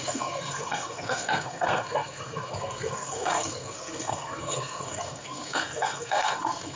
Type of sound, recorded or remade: remade